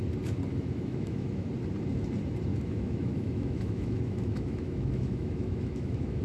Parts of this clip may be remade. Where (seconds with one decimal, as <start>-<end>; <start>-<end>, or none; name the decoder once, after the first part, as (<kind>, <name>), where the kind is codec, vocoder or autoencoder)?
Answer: 0.5-1.5 (autoencoder, DAC-VAE); 2.5-6.2